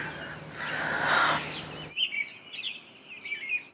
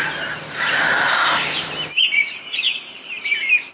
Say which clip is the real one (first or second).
first